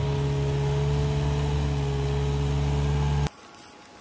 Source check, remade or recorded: recorded